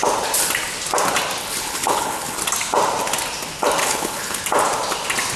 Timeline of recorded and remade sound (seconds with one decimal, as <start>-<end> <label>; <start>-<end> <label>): 0.0-1.4 recorded; 1.4-2.4 remade; 2.4-3.8 recorded; 3.8-4.4 remade; 4.4-5.4 recorded